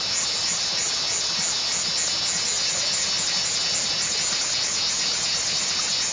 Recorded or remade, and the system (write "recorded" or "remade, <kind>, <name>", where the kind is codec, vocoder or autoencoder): recorded